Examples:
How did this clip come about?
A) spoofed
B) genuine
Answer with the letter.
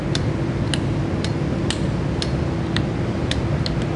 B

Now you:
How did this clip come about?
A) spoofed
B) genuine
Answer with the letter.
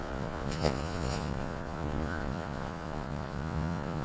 A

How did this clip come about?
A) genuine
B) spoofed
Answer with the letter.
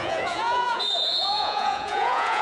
B